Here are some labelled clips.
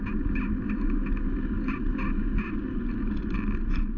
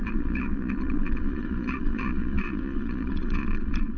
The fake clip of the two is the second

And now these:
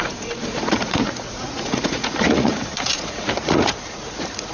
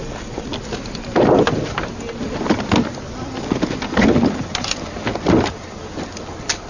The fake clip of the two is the first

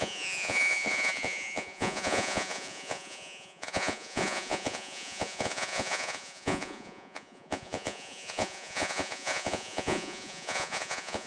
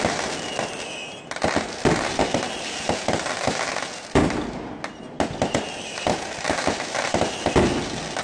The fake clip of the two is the first